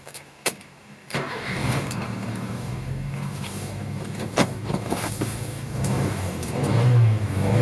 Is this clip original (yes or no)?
no